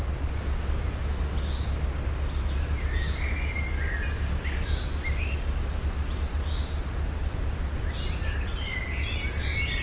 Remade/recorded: recorded